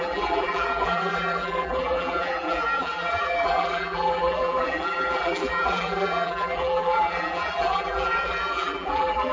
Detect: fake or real fake